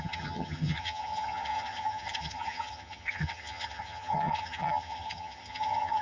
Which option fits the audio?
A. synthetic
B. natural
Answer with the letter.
A